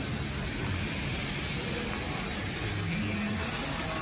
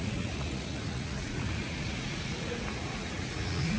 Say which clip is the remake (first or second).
second